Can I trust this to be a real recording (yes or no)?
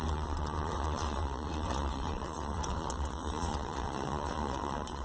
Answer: no